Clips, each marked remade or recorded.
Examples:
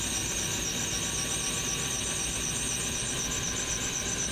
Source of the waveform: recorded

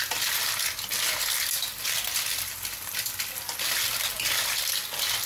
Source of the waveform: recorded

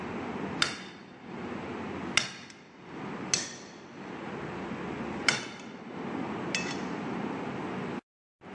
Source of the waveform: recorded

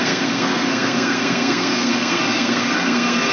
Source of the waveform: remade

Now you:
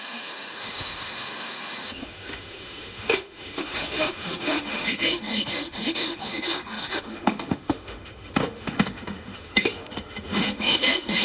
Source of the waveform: remade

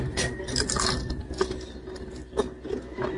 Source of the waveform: recorded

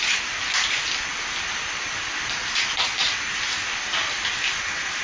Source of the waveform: recorded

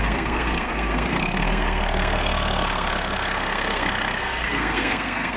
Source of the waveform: remade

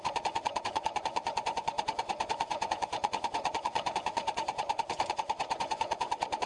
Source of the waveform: remade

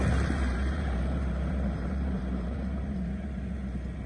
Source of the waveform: remade